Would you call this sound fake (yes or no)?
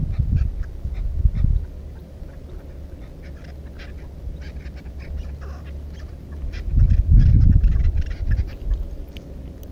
no